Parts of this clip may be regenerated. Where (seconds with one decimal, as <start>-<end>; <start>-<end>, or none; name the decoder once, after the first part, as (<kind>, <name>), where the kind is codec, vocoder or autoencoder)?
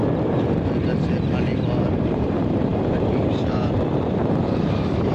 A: 2.0-5.1 (vocoder, BigVGAN v2)